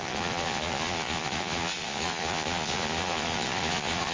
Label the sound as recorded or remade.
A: remade